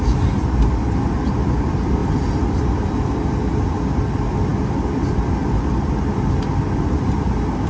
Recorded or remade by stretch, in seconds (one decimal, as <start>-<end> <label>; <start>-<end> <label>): 0.0-7.7 recorded